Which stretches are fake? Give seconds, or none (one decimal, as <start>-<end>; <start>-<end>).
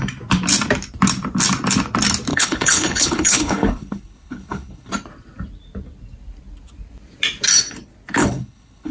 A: 2.3-4.9; 8.2-8.9